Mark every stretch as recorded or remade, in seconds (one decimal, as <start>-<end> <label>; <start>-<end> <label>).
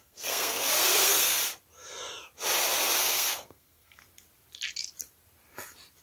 0.0-1.4 remade; 1.4-3.0 recorded; 3.0-4.0 remade; 4.0-6.0 recorded